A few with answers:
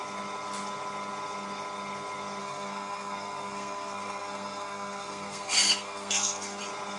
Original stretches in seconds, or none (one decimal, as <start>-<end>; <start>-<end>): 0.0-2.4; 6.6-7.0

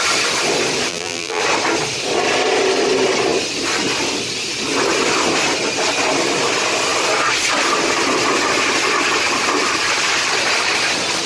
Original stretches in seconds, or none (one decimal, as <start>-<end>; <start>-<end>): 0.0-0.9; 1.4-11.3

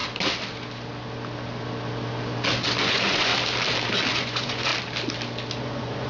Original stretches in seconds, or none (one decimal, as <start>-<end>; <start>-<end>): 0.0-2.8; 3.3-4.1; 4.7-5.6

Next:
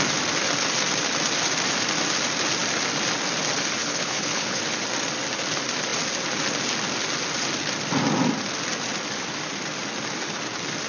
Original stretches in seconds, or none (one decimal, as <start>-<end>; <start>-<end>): 0.0-3.8; 4.6-10.9

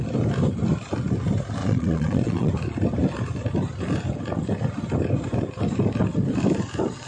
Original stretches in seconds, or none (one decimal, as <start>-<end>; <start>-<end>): 0.0-1.6; 2.5-7.1

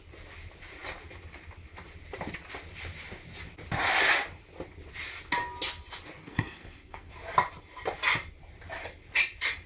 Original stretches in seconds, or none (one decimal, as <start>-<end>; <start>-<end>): 0.0-6.2; 7.1-9.7

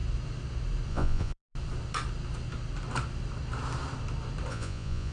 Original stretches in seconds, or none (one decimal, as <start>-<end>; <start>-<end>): 0.0-0.9; 1.4-4.5